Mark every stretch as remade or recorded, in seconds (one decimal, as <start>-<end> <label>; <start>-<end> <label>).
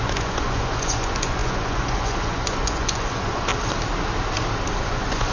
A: 0.0-3.5 remade; 3.5-4.8 recorded; 4.8-5.3 remade